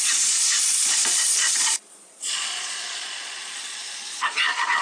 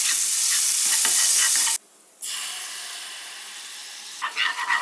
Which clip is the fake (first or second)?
first